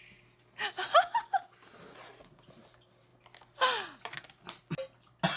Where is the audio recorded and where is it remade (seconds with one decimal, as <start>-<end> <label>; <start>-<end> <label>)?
0.0-5.4 recorded